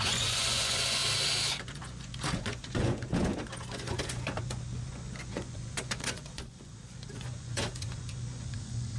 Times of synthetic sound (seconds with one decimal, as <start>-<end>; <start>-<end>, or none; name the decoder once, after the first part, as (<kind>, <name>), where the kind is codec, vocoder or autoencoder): 0.0-1.0 (vocoder, Vocos); 1.6-9.0